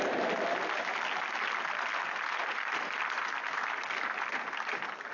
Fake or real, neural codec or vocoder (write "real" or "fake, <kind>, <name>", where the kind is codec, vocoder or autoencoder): real